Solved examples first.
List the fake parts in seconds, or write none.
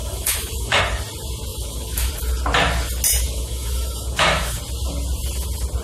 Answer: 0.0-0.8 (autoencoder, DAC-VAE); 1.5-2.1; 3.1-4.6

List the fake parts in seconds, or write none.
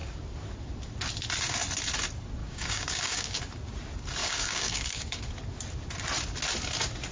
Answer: 2.4-3.4 (codec, DAC); 4.2-5.2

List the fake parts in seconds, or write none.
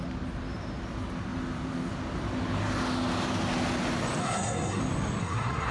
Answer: 4.2-4.8 (codec, SNAC); 5.2-5.7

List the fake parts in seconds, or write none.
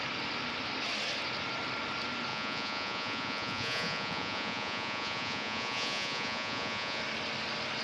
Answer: 2.3-7.0 (vocoder, Vocos)